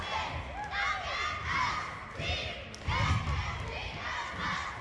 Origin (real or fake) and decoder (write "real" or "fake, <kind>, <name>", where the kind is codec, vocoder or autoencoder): real